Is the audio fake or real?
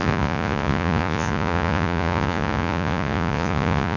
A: fake